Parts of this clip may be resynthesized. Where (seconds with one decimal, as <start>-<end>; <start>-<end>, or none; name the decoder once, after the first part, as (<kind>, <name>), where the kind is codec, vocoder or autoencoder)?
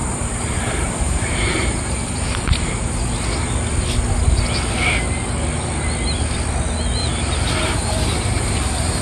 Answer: 0.0-3.0 (vocoder, BigVGAN v2); 7.0-9.0